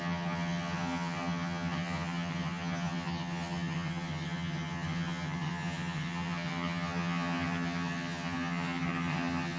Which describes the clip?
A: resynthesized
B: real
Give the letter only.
A